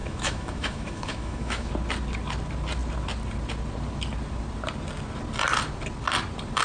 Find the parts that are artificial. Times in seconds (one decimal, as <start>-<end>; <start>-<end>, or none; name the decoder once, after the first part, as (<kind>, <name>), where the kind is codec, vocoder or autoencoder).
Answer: 0.0-1.7 (autoencoder, DAC-VAE)